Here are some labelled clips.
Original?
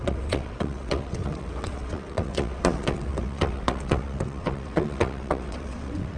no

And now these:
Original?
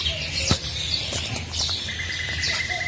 yes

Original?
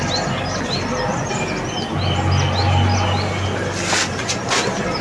yes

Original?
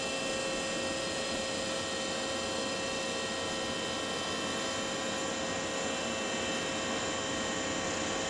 yes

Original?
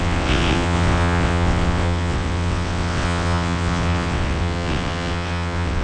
no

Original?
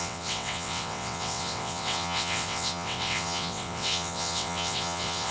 no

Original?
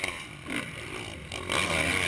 yes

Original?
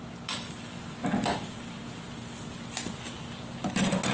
yes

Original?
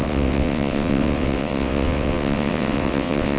no